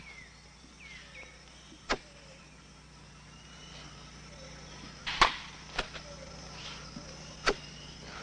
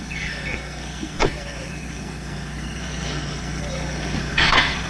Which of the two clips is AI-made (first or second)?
second